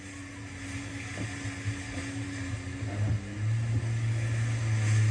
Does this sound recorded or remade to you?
recorded